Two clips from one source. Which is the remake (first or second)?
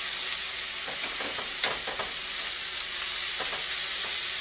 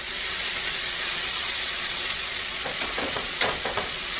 second